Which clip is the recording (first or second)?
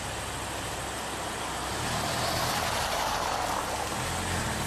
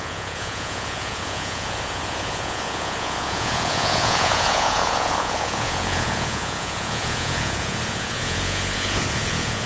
first